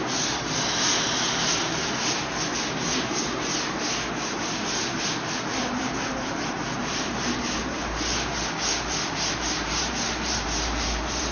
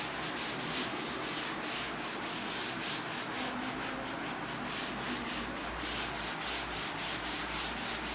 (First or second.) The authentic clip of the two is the second